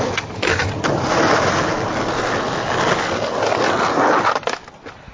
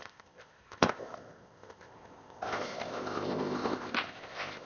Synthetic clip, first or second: second